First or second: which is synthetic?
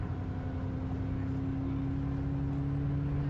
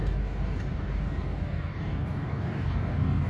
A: second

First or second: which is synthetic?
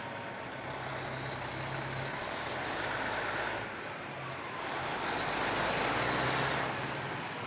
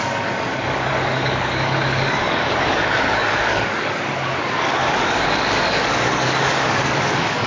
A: second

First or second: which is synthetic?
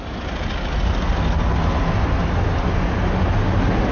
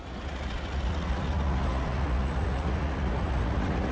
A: second